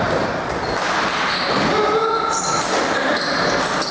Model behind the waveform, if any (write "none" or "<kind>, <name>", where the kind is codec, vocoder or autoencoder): none